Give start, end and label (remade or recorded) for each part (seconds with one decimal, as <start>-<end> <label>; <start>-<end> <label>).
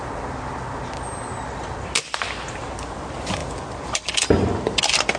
0.0-5.2 recorded